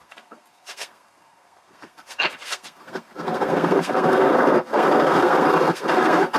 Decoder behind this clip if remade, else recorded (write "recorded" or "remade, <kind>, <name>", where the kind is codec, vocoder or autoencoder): remade, codec, SNAC